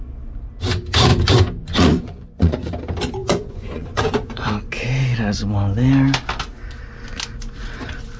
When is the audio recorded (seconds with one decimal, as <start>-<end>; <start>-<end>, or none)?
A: 0.0-1.1; 2.7-3.2; 4.5-8.2